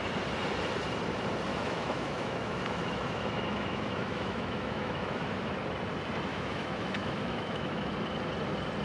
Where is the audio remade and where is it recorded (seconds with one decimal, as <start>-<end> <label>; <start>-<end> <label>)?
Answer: 0.0-1.5 recorded; 1.5-5.5 remade; 5.5-6.3 recorded; 6.3-7.9 remade; 7.9-8.8 recorded